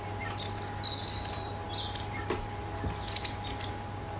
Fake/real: real